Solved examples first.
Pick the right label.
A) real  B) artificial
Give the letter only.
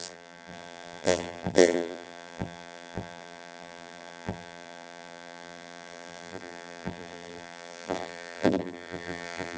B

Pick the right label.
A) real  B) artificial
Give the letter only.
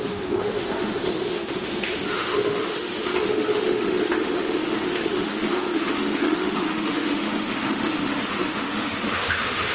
B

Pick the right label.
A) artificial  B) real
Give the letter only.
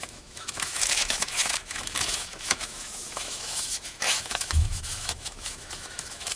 A